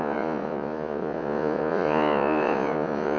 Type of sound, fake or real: fake